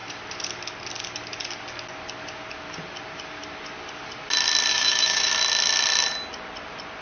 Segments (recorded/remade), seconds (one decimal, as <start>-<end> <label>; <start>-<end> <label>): 0.0-4.7 recorded; 4.7-5.3 remade; 5.3-7.0 recorded